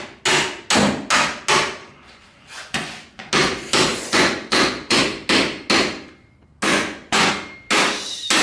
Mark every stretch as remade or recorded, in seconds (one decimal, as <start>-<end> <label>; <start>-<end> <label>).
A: 0.0-1.8 recorded; 1.8-3.3 remade; 3.3-3.9 recorded; 3.9-5.0 remade; 5.0-6.7 recorded; 6.7-7.3 remade; 7.3-8.4 recorded